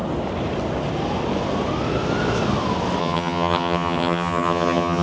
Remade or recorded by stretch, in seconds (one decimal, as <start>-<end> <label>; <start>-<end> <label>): 0.0-3.0 recorded; 3.0-5.0 remade